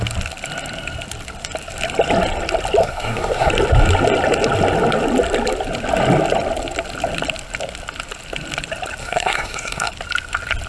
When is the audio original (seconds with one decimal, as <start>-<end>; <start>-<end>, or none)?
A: 0.0-2.8; 3.5-9.0; 9.9-10.7